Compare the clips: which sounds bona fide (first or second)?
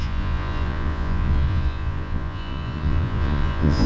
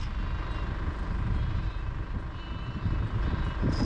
second